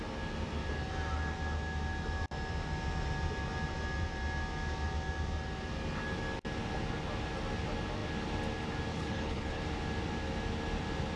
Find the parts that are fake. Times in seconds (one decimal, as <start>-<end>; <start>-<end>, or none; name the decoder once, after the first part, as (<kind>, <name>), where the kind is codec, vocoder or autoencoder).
8.9-9.6 (codec, HILCodec)